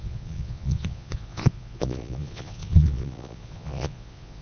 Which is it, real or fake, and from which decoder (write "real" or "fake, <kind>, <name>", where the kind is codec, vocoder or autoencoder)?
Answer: fake, vocoder, Vocos